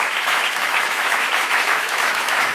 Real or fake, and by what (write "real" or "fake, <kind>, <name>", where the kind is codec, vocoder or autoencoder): fake, autoencoder, DAC-VAE